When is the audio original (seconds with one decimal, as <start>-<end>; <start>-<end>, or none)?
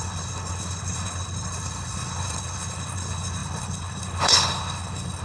none